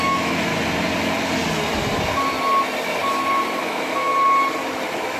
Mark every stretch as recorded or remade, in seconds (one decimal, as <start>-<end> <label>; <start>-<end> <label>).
0.0-0.5 remade; 0.5-3.6 recorded; 3.6-4.1 remade; 4.1-4.8 recorded; 4.8-5.2 remade